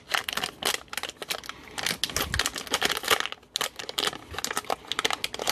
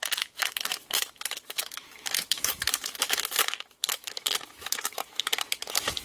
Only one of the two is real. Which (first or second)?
first